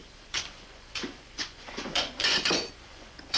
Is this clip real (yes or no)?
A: no